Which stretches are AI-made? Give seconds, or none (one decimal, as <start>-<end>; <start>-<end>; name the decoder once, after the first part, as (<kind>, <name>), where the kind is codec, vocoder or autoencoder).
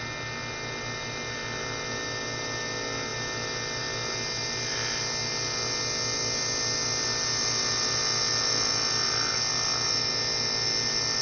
none